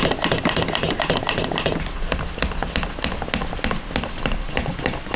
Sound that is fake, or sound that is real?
real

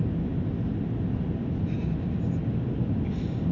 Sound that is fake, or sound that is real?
real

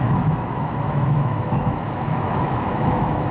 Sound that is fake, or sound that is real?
fake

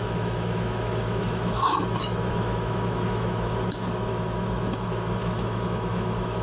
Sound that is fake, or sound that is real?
fake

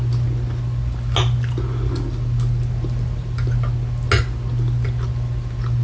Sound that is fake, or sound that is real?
real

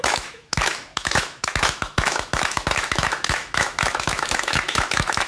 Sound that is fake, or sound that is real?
fake